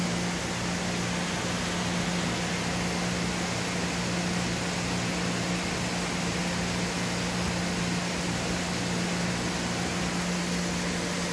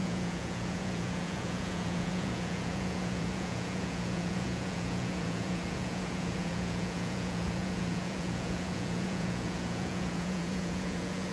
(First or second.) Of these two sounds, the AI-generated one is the second